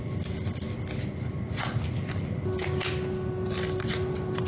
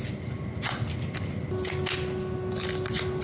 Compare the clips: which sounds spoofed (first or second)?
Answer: first